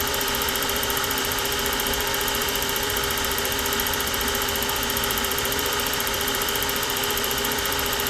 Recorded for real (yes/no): no